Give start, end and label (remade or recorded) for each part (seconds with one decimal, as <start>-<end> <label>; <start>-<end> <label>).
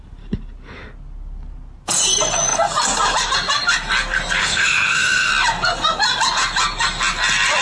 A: 0.0-4.4 recorded; 4.4-5.3 remade; 5.3-7.6 recorded